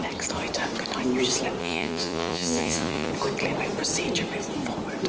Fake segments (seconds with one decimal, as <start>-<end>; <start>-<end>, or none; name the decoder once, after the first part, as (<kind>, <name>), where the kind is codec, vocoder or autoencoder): 1.6-3.1 (vocoder, Vocos)